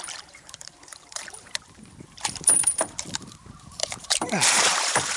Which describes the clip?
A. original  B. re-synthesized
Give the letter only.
B